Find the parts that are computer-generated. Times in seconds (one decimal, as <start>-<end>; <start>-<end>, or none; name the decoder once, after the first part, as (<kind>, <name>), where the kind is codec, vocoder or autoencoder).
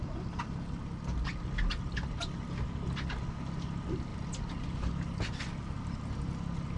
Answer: none